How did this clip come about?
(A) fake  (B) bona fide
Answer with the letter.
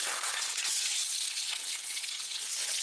A